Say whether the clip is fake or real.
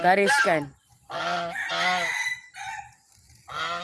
real